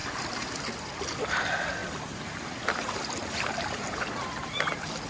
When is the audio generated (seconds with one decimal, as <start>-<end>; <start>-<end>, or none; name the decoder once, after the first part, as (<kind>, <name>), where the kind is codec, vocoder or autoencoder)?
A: 0.0-1.0 (vocoder, BigVGAN v2)